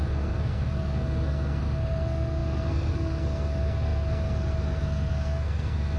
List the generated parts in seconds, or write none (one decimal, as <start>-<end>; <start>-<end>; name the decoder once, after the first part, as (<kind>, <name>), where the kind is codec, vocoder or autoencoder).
0.0-6.0 (codec, SNAC)